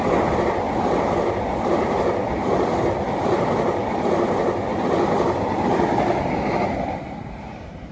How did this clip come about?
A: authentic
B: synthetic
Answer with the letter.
A